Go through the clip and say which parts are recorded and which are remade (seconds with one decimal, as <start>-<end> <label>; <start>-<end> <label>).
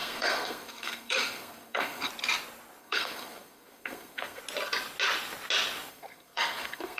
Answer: 0.0-2.1 remade; 2.1-2.8 recorded; 2.8-4.4 remade; 4.4-5.9 recorded; 5.9-7.0 remade